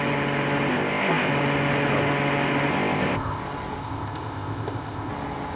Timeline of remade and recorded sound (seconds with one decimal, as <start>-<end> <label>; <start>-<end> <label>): 0.0-0.7 recorded; 0.7-1.3 remade; 1.3-2.7 recorded; 2.7-3.4 remade; 3.4-3.8 recorded; 3.8-5.1 remade; 5.1-5.6 recorded